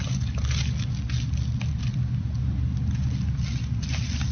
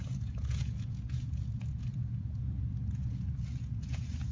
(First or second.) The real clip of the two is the first